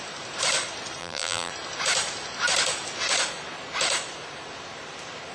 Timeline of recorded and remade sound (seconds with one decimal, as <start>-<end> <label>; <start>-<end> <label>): 0.0-1.0 recorded; 1.0-1.5 remade; 1.5-5.3 recorded